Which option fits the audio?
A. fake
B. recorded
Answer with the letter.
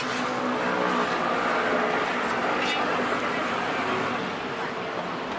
B